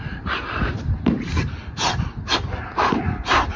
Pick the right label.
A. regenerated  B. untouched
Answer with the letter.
B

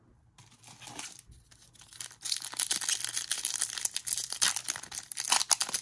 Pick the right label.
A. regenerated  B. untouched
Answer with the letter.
B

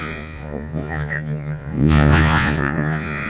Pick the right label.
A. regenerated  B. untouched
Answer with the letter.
A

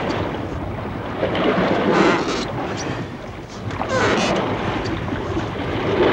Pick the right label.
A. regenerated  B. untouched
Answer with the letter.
B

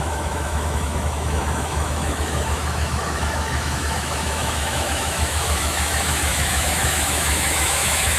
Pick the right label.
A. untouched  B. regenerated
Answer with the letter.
B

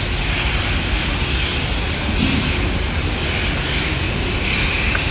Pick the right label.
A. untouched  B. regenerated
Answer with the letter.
A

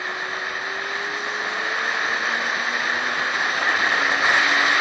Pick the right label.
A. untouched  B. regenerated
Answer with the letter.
A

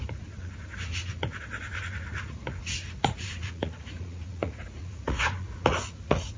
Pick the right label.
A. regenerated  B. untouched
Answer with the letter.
A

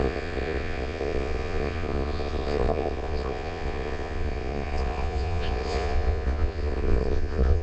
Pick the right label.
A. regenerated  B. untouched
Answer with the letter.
A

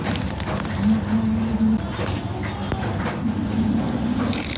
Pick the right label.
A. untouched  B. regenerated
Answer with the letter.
A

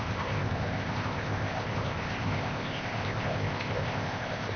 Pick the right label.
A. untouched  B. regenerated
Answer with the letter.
B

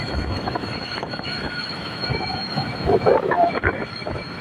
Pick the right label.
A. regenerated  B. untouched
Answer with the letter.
A